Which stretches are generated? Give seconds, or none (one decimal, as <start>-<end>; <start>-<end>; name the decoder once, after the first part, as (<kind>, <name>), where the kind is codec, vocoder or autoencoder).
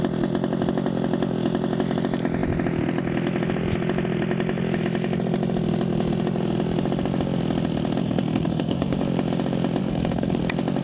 8.0-9.0 (codec, SNAC); 9.8-10.4